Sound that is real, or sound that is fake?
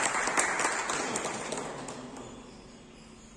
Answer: real